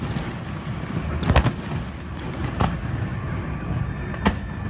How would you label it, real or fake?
real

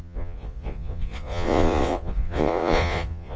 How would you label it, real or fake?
fake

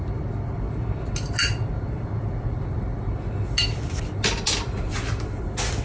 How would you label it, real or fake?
real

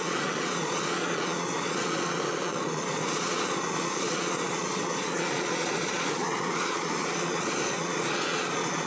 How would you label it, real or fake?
fake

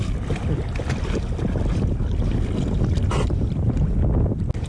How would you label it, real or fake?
real